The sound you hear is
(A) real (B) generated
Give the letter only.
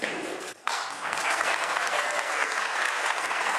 B